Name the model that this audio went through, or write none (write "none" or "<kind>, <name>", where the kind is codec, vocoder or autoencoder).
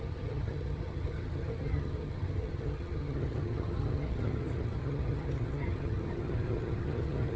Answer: vocoder, HiFi-GAN